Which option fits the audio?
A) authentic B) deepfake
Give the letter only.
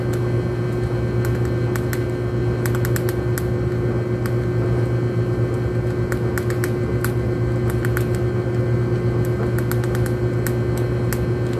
A